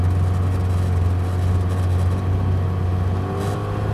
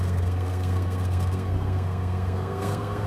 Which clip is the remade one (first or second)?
second